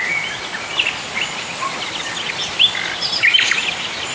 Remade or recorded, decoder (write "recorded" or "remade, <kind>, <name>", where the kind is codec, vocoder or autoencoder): recorded